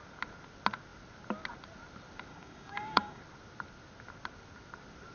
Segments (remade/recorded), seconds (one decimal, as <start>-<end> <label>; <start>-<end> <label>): 0.0-2.3 recorded; 2.3-3.2 remade; 3.2-5.1 recorded